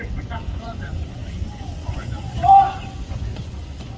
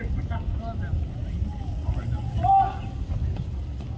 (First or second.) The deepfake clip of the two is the first